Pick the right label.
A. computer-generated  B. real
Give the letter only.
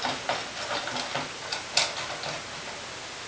B